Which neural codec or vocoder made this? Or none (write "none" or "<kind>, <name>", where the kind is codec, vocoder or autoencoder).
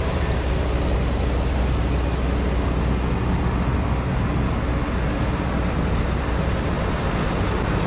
none